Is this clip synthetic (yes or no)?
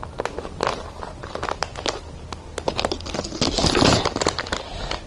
no